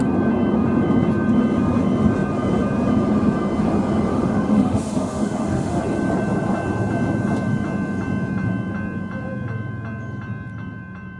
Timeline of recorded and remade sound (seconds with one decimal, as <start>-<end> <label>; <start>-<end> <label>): 0.0-4.1 recorded; 4.1-5.8 remade; 5.8-11.2 recorded